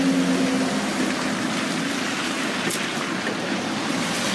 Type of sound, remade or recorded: recorded